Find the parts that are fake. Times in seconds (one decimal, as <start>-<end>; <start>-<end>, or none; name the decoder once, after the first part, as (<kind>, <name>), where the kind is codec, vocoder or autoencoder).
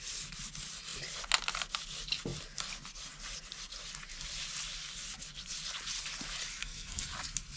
6.6-7.1 (codec, SNAC)